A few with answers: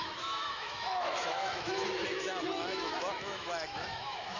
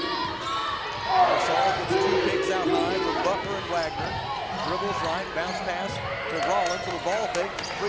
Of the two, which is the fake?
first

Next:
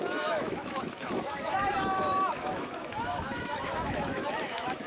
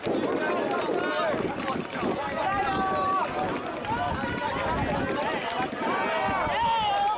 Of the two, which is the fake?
first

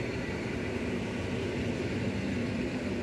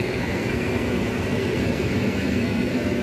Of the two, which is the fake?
second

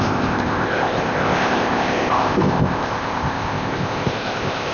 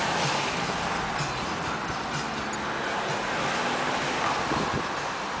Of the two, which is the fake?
first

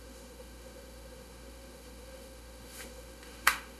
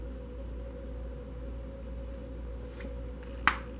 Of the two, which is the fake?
first